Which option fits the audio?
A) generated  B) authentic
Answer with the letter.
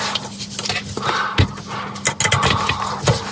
B